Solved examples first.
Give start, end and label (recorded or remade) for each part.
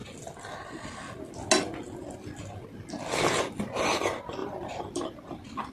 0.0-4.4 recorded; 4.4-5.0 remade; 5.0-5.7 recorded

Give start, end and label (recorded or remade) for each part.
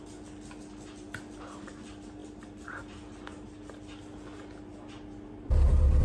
0.0-6.0 recorded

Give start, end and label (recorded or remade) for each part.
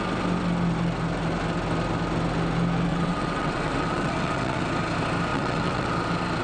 0.0-2.9 recorded; 2.9-4.6 remade; 4.6-5.3 recorded; 5.3-5.9 remade; 5.9-6.4 recorded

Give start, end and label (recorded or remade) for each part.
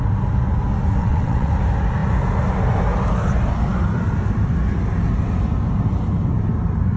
0.0-1.0 recorded; 1.0-1.5 remade; 1.5-7.0 recorded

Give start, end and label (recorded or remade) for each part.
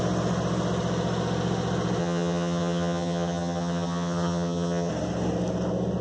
0.0-2.0 recorded; 2.0-4.9 remade; 4.9-6.0 recorded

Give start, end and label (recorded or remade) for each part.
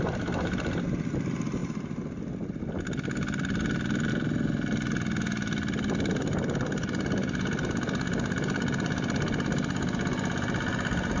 0.0-11.2 recorded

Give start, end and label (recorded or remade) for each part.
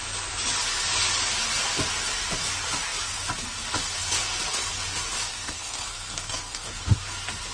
0.0-5.3 recorded; 5.3-6.8 remade; 6.8-7.5 recorded